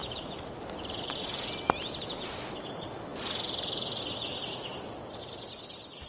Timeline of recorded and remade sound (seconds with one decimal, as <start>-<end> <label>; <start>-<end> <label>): 0.0-1.1 remade; 1.1-6.1 recorded